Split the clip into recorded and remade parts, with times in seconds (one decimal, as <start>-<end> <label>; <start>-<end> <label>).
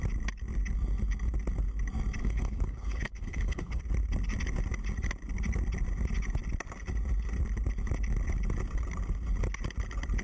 0.0-2.2 recorded; 2.2-3.8 remade; 3.8-10.2 recorded